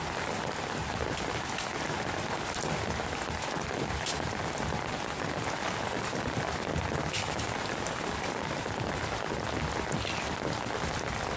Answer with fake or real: real